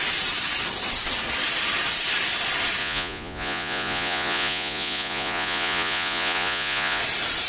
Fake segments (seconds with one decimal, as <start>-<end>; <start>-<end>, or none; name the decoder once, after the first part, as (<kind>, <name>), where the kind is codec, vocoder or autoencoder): 2.8-7.0 (vocoder, Vocos)